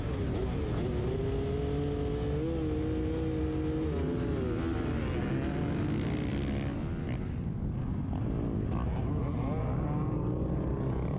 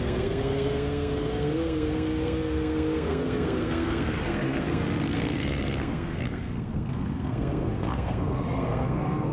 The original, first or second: first